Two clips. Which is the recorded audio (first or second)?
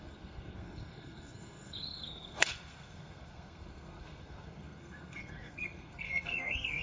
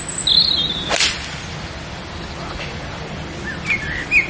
second